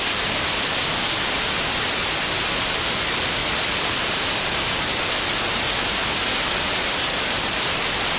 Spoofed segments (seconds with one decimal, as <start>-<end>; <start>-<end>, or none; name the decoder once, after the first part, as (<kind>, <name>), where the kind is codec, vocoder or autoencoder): none

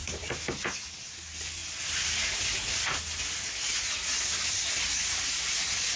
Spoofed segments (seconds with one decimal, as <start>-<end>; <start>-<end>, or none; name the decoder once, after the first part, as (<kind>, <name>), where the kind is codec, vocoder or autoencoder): none

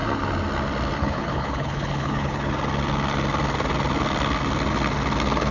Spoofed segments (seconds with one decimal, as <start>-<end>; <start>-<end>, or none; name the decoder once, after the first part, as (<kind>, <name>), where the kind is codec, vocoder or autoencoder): 1.0-2.5 (codec, HILCodec)

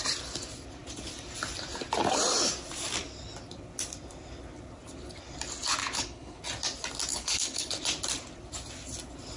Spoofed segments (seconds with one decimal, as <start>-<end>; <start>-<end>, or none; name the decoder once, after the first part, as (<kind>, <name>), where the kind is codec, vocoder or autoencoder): 5.8-6.4 (codec, HILCodec); 7.1-7.7

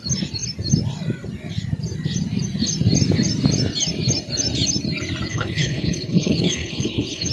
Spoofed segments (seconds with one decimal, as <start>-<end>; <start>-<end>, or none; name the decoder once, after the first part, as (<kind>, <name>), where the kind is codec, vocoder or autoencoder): 5.3-7.3 (codec, HILCodec)